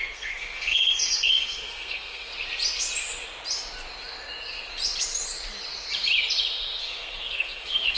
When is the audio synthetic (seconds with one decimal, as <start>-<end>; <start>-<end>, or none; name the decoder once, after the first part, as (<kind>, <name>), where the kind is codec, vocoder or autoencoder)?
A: 0.0-2.3 (codec, SNAC); 6.8-8.0